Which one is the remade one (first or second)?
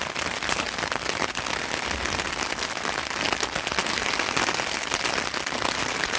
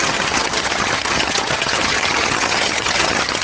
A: second